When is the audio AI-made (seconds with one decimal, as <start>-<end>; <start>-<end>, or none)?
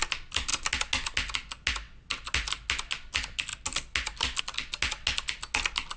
none